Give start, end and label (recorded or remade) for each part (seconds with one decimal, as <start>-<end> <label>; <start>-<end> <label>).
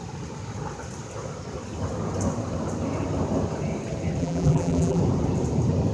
0.0-4.2 recorded; 4.2-5.0 remade; 5.0-5.9 recorded